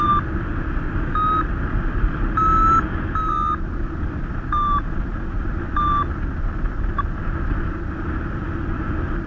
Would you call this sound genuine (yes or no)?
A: yes